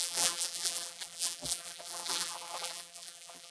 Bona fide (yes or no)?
no